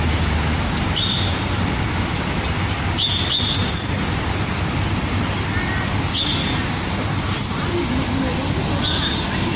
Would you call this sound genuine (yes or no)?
yes